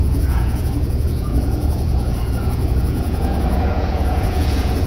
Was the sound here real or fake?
fake